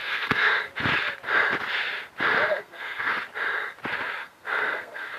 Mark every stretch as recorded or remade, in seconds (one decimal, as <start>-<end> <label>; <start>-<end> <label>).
0.0-0.6 remade; 0.6-2.5 recorded; 2.5-3.1 remade; 3.1-4.2 recorded; 4.2-5.2 remade